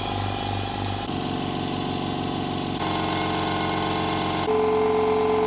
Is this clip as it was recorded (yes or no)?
yes